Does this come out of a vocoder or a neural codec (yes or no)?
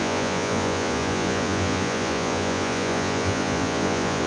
yes